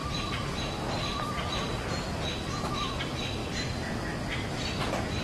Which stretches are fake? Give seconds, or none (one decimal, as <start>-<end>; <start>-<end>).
3.0-3.4; 4.2-5.2